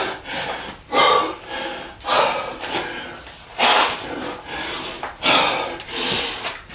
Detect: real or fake real